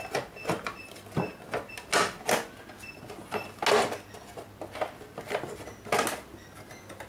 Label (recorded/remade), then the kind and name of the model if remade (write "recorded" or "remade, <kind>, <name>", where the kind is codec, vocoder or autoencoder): recorded